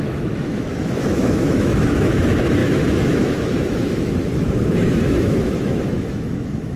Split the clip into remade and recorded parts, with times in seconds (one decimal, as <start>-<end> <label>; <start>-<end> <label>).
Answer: 0.0-6.8 remade